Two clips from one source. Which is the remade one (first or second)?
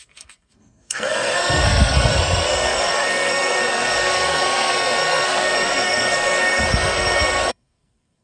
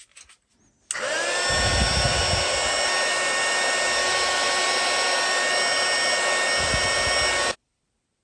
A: first